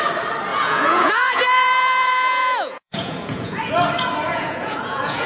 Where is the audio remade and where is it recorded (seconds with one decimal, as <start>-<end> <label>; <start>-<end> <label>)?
0.0-0.5 recorded; 0.5-3.7 remade; 3.7-4.3 recorded; 4.3-5.3 remade